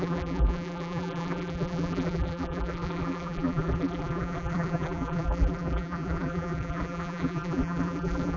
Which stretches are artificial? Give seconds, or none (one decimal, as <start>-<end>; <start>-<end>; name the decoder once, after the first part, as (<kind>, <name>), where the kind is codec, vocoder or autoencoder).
0.0-8.4 (vocoder, BigVGAN v2)